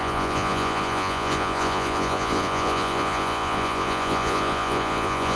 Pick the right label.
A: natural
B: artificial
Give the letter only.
B